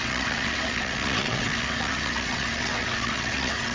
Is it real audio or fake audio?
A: fake